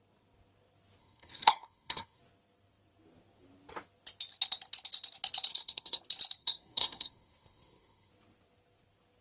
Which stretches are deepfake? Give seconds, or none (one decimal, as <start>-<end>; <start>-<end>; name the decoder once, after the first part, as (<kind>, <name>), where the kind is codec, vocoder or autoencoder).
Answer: 1.0-2.2 (codec, SNAC); 5.5-6.0; 6.4-8.1